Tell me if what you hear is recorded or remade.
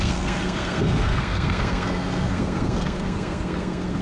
remade